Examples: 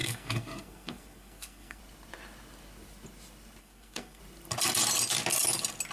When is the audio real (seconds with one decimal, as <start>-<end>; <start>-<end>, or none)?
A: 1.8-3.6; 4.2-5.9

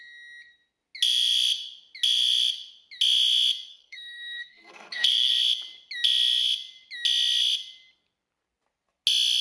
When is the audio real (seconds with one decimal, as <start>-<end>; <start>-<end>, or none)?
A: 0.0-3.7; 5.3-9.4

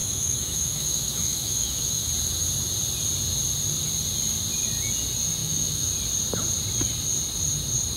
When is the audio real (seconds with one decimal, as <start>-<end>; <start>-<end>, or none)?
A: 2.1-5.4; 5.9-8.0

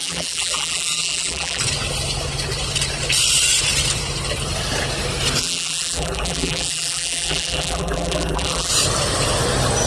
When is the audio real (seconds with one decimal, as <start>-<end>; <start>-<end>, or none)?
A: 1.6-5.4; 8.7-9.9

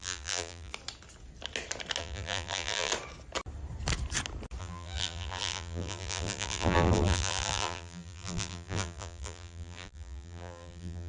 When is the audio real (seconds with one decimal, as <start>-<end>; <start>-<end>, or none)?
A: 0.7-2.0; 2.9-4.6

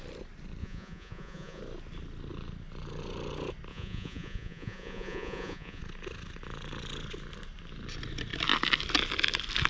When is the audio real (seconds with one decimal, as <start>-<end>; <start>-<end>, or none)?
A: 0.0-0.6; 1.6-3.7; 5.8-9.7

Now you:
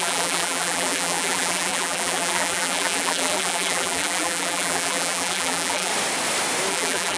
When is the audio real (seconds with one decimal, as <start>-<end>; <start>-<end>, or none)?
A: 5.9-6.7